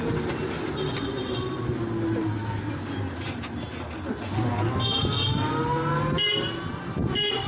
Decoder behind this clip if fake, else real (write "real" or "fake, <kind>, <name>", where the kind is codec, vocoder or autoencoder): real